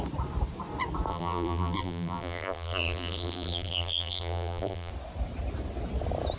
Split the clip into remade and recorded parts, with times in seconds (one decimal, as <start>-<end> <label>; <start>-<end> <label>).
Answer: 0.0-1.1 recorded; 1.1-4.9 remade; 4.9-6.4 recorded